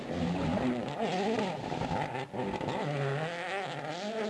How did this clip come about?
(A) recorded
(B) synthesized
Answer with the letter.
A